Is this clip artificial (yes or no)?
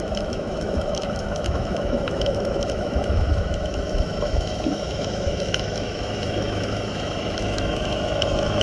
yes